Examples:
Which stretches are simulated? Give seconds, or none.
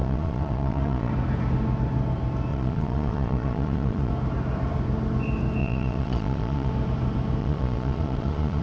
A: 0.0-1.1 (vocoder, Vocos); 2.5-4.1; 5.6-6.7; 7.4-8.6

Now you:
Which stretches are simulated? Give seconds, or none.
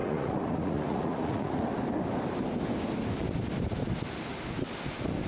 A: 0.0-1.8 (vocoder, Vocos)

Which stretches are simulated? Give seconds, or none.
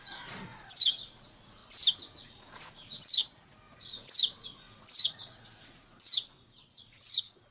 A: 0.0-1.6 (vocoder, Vocos); 2.2-3.2; 3.8-7.5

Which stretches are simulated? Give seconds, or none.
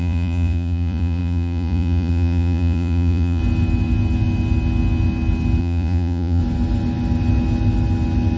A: 0.0-3.4 (vocoder, Vocos); 5.6-6.4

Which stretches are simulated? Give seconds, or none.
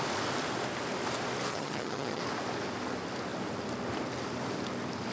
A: 1.5-2.2 (vocoder, HiFi-GAN)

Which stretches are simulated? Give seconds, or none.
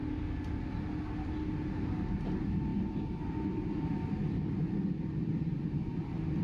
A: none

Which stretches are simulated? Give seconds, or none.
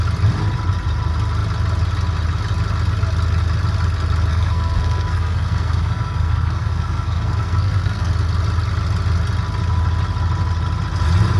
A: 4.3-8.1 (codec, SNAC)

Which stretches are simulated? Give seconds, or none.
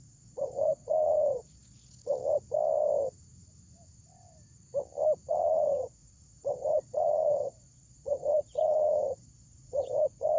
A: 0.0-2.1 (vocoder, Vocos); 5.3-10.4